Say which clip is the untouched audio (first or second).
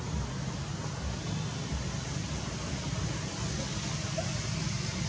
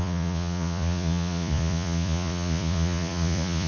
first